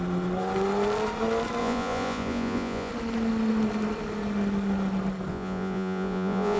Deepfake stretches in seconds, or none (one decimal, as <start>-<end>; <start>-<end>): 1.6-2.9; 5.3-6.6